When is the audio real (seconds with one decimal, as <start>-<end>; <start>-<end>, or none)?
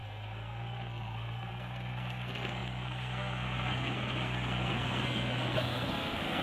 none